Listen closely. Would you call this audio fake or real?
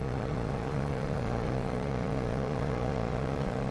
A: fake